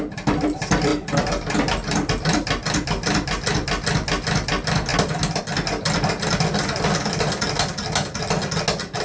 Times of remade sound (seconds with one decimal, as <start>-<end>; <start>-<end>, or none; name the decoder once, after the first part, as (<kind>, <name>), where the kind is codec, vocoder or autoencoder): none